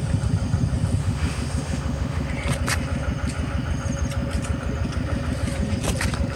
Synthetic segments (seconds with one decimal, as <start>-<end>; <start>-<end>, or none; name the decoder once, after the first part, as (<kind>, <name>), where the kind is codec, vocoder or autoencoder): 1.0-2.3 (autoencoder, DAC-VAE)